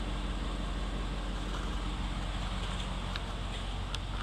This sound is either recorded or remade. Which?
recorded